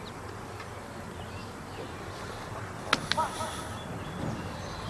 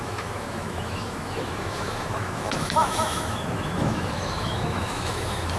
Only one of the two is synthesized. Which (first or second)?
second